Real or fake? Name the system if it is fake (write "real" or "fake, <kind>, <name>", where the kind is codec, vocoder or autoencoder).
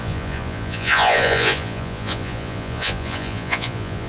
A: fake, vocoder, Vocos